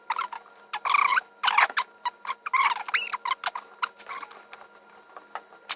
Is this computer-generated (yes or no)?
no